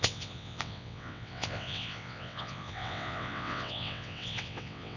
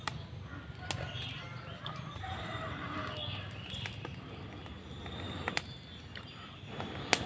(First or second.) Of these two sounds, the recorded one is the second